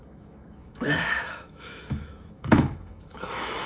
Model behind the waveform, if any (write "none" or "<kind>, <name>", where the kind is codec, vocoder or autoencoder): autoencoder, DAC-VAE